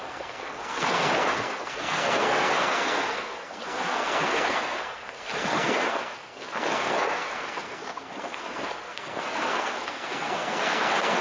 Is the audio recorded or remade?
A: remade